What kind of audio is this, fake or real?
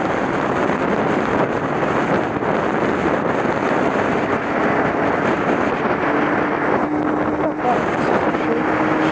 real